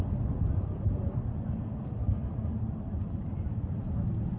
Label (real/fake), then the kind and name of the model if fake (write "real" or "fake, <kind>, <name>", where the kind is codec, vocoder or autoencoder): real